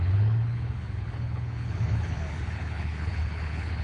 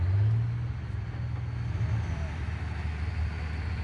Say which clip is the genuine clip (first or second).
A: second